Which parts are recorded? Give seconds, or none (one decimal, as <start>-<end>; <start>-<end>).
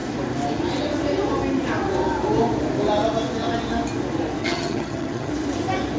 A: 0.0-4.4; 5.3-6.0